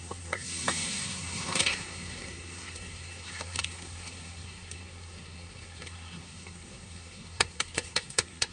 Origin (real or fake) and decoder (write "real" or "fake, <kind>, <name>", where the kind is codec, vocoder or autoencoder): fake, codec, SNAC